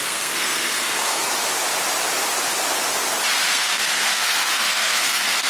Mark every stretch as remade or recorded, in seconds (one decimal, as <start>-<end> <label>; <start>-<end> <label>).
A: 0.0-1.3 remade; 1.3-3.5 recorded; 3.5-5.5 remade